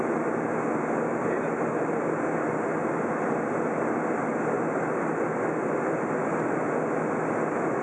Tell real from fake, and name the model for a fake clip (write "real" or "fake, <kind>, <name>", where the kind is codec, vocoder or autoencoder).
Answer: real